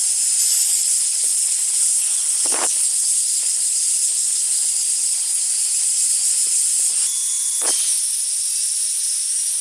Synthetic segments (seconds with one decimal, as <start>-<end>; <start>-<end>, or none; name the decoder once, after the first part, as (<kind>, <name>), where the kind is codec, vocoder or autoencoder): 0.5-5.4 (codec, HILCodec)